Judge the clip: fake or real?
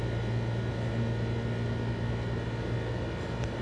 real